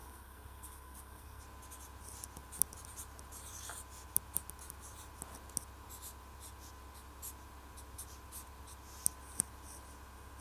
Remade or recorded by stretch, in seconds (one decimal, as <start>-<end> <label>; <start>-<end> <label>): 0.0-1.4 remade; 1.4-10.4 recorded